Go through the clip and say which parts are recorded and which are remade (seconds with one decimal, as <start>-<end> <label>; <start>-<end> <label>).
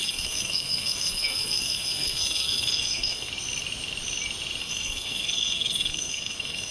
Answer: 0.0-3.3 remade; 3.3-4.6 recorded; 4.6-6.7 remade